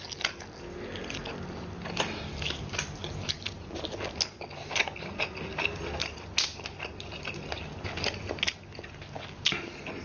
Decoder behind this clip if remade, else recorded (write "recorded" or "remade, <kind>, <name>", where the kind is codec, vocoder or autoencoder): recorded